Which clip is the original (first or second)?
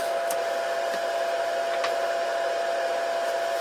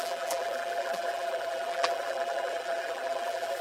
first